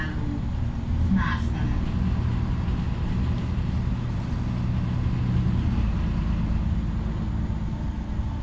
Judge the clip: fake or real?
real